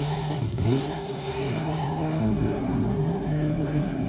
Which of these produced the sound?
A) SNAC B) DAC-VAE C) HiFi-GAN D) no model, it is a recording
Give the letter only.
A